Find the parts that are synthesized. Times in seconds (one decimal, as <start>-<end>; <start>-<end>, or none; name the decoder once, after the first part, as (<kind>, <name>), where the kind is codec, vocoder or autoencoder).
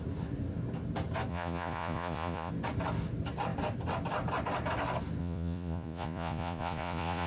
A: 1.3-2.5 (vocoder, Vocos); 5.2-7.3